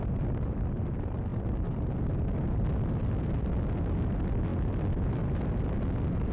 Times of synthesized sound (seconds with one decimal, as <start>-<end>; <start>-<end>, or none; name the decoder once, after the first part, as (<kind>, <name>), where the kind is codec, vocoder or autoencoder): none